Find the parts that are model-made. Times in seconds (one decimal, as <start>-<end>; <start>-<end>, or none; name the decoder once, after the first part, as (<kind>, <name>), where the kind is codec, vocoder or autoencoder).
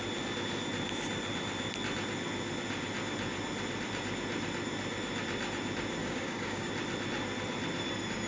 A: 6.0-6.7 (codec, DAC)